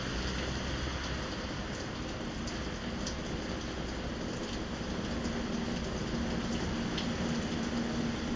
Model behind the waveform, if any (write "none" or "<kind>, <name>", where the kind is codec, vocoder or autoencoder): none